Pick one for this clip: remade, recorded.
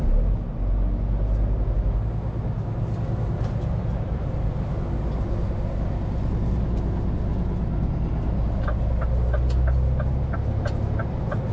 recorded